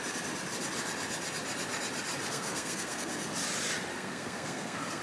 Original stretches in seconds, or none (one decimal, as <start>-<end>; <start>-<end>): 0.0-2.2; 3.1-3.9